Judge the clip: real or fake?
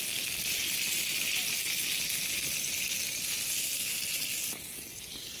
real